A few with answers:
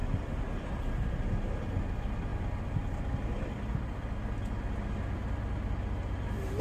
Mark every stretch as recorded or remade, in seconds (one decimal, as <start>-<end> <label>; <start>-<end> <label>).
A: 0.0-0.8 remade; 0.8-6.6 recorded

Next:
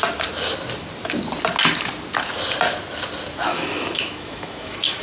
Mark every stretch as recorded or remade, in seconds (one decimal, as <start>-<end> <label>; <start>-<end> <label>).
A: 0.0-3.5 recorded; 3.5-5.0 remade

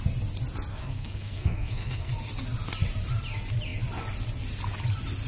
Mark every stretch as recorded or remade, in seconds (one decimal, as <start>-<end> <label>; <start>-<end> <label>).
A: 0.0-0.7 recorded; 0.7-2.1 remade; 2.1-5.3 recorded